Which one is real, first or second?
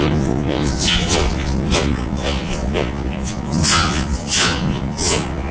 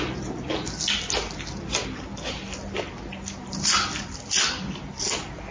second